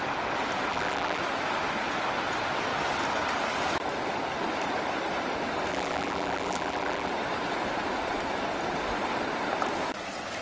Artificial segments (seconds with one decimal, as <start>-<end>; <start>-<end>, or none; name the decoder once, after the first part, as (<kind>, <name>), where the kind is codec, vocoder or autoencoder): 0.7-1.2 (vocoder, BigVGAN v2); 5.7-7.1